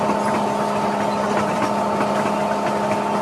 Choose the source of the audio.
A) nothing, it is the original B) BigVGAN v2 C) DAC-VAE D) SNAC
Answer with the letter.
A